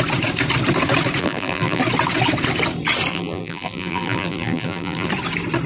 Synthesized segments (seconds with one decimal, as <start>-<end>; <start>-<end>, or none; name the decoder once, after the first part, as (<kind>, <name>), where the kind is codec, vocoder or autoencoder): 1.2-1.8 (vocoder, BigVGAN v2); 3.1-5.1